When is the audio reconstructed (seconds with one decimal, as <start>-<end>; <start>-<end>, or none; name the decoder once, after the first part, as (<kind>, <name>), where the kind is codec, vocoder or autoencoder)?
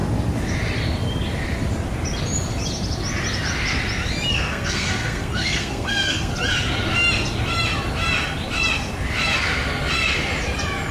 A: 4.3-6.3 (codec, SNAC)